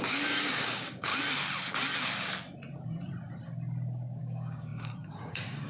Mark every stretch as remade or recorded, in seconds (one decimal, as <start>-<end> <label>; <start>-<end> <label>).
0.0-1.1 remade; 1.1-4.2 recorded; 4.2-5.7 remade